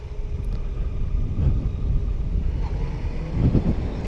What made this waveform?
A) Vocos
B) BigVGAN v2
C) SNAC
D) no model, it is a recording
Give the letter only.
D